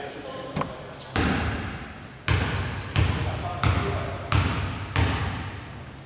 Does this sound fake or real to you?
real